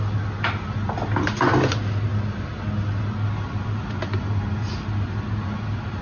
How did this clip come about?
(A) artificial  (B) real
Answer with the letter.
B